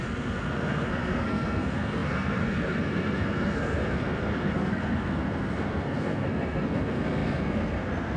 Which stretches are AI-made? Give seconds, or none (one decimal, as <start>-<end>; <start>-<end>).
0.0-8.2